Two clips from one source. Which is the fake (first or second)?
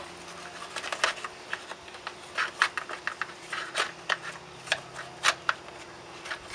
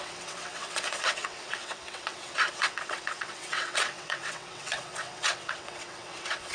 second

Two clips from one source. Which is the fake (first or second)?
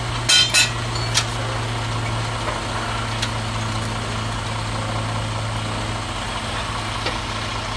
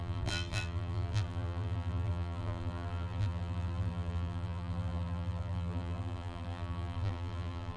second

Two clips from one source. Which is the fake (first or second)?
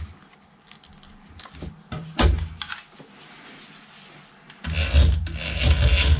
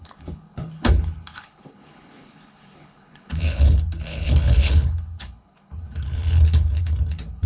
second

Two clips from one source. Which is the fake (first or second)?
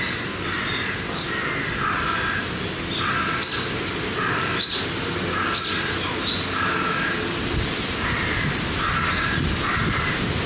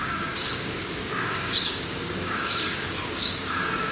second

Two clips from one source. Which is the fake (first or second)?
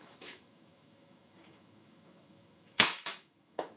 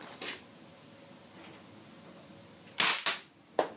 first